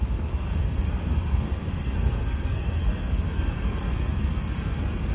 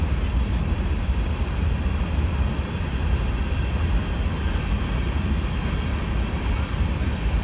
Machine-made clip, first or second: first